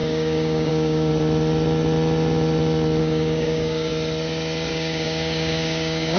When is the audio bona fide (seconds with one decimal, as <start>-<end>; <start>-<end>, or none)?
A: 1.1-3.0; 3.9-4.7